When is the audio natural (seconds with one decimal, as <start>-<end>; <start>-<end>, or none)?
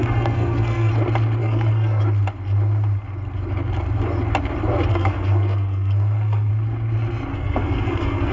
0.9-1.4; 2.0-4.9; 6.5-7.3